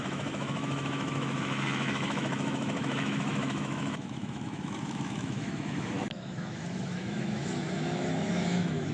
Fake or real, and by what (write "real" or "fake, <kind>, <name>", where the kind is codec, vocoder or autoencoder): fake, autoencoder, DAC-VAE